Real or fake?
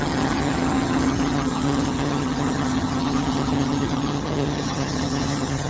fake